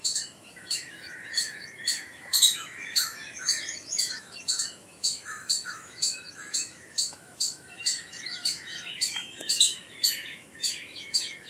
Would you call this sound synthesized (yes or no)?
yes